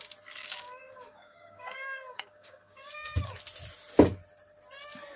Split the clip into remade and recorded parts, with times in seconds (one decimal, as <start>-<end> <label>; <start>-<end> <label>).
0.0-0.4 recorded; 0.4-3.4 remade; 3.4-5.2 recorded

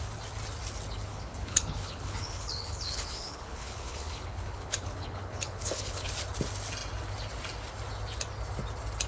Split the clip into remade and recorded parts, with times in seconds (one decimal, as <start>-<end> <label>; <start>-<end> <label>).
0.0-1.1 recorded; 1.1-6.1 remade; 6.1-9.1 recorded

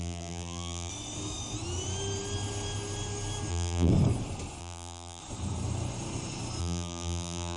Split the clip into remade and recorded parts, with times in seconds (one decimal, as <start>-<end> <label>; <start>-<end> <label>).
0.0-0.9 remade; 0.9-3.5 recorded; 3.5-3.9 remade; 3.9-4.6 recorded; 4.6-5.2 remade; 5.2-6.6 recorded; 6.6-7.6 remade

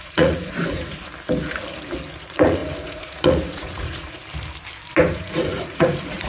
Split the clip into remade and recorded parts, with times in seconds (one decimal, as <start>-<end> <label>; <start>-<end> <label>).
0.0-1.1 remade; 1.1-2.1 recorded; 2.1-4.2 remade; 4.2-5.1 recorded; 5.1-6.3 remade